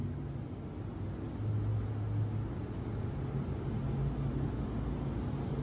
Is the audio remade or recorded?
recorded